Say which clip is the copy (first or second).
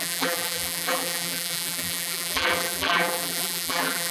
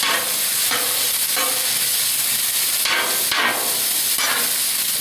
first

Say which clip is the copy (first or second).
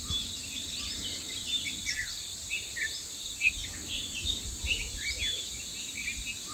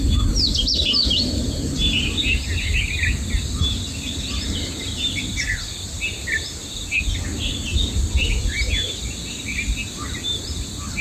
first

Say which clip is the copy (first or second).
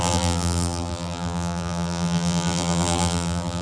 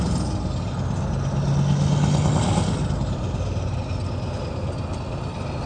first